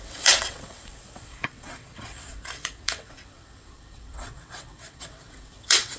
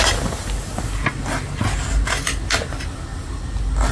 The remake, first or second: first